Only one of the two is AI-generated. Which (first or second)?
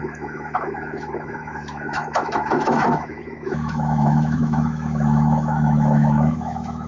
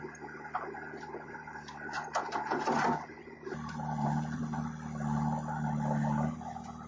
first